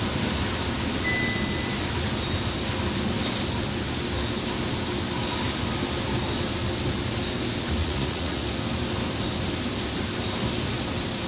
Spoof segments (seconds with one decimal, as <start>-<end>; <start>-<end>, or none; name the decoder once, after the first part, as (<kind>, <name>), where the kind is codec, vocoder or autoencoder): 7.8-8.4 (vocoder, Vocos)